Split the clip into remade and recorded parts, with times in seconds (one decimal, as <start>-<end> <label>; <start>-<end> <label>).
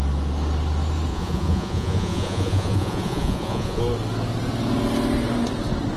0.0-1.1 recorded; 1.1-3.8 remade; 3.8-6.0 recorded